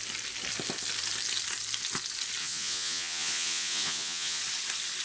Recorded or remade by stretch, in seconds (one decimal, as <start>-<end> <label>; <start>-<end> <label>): 0.0-2.4 recorded; 2.4-4.4 remade; 4.4-5.0 recorded